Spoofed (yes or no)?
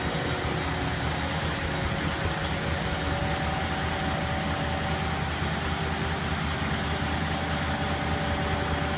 no